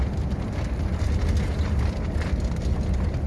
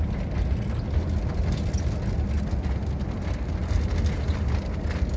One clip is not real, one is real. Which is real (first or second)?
second